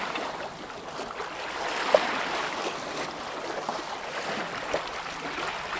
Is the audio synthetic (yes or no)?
no